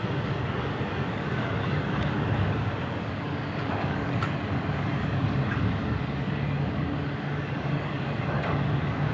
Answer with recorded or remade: remade